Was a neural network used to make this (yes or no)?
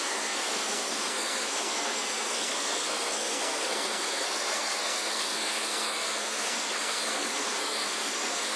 yes